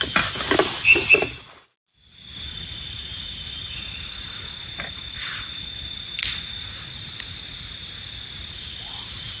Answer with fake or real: real